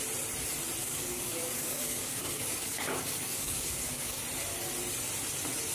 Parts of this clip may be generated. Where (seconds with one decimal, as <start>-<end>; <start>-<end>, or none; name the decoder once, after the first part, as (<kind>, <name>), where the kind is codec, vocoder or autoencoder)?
0.8-4.2 (codec, DAC)